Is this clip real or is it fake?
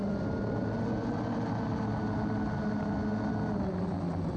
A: real